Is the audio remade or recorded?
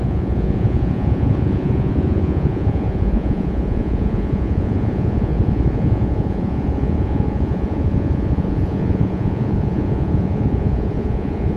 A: remade